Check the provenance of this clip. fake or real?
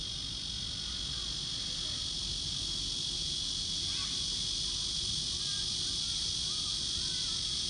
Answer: real